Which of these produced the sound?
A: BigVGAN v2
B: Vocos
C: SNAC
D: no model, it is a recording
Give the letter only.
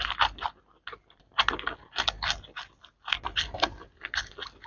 D